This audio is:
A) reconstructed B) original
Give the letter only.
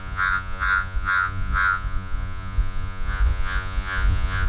A